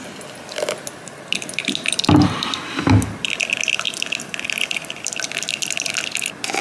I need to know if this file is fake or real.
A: real